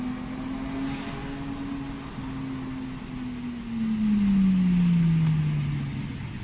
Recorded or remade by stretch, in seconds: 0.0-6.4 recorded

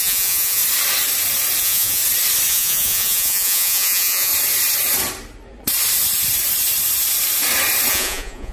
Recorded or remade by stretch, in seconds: 0.0-0.6 remade; 0.6-1.6 recorded; 1.6-2.0 remade; 2.0-2.5 recorded; 2.5-4.3 remade; 4.3-7.9 recorded; 7.9-8.5 remade

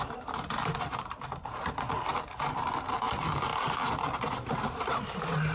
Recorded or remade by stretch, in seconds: 0.0-3.5 remade; 3.5-4.3 recorded; 4.3-5.5 remade

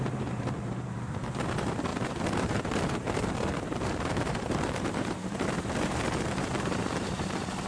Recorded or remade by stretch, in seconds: 0.0-7.7 remade